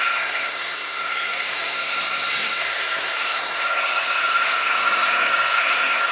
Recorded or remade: remade